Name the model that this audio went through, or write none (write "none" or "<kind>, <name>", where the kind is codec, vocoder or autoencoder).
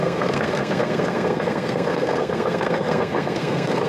codec, SNAC